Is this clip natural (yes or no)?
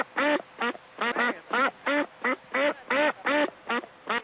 yes